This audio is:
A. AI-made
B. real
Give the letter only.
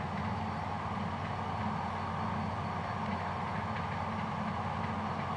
B